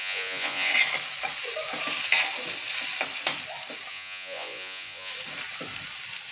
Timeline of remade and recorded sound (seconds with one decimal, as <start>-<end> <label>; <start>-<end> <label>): 0.0-0.7 remade; 0.7-3.9 recorded; 3.9-5.1 remade; 5.1-6.3 recorded